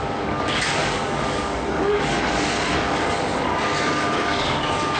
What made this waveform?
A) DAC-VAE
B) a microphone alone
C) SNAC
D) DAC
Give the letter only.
D